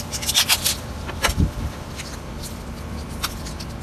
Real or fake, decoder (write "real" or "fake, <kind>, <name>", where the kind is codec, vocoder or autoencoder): real